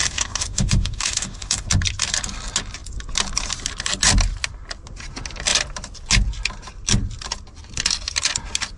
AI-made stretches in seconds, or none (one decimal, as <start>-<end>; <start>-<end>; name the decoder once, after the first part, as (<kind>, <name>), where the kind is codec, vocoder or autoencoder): 0.0-1.7 (autoencoder, DAC-VAE)